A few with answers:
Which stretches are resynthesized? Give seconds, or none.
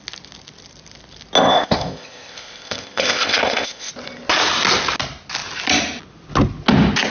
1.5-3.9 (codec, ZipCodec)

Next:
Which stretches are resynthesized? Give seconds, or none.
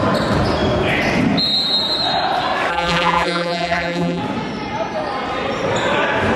2.7-4.2 (vocoder, BigVGAN v2)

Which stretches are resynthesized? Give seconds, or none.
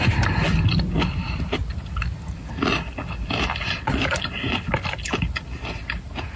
none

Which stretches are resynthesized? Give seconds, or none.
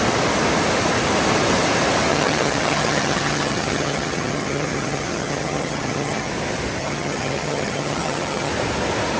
2.1-6.3 (vocoder, HiFi-GAN); 6.8-8.5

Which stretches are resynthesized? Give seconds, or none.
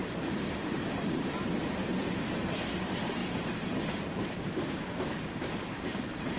0.0-1.8 (vocoder, BigVGAN v2); 2.8-3.2; 4.3-6.4